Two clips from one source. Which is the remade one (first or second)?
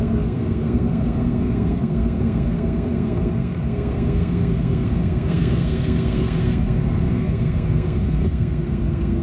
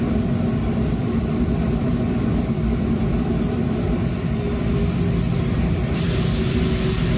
first